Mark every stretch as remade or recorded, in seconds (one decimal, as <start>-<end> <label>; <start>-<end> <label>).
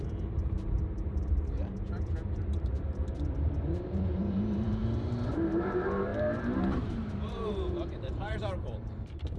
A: 0.0-4.8 remade; 4.8-5.3 recorded; 5.3-9.4 remade